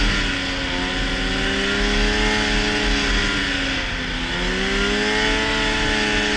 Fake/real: real